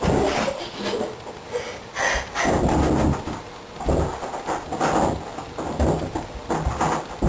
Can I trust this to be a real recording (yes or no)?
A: yes